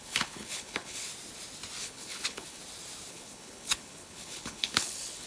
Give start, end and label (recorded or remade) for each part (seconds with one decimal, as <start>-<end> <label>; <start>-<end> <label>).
0.0-1.1 remade; 1.1-1.8 recorded; 1.8-2.6 remade; 2.6-3.1 recorded; 3.1-5.3 remade